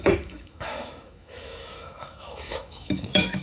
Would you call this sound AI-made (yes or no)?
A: yes